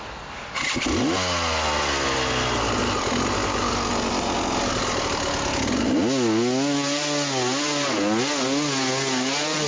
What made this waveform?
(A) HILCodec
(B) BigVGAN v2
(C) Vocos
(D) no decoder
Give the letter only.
D